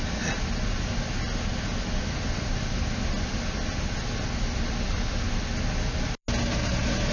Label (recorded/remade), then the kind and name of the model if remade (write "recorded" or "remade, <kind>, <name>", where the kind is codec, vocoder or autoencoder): recorded